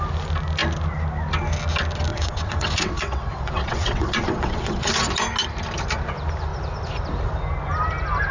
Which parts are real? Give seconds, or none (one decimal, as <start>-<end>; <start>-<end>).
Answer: 0.0-2.1; 4.9-8.3